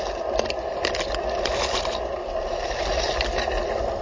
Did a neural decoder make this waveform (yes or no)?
no